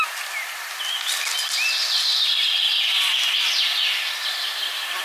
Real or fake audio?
real